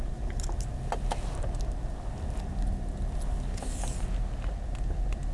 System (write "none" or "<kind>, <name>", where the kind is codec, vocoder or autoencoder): none